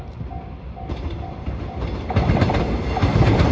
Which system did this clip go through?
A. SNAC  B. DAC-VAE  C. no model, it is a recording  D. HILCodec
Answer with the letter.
C